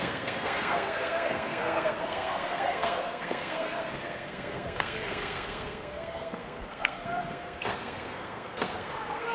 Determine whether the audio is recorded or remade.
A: remade